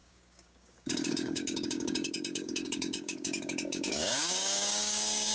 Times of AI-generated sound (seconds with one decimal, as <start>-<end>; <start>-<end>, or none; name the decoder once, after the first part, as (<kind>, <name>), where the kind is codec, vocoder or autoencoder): 0.0-5.3 (codec, DAC)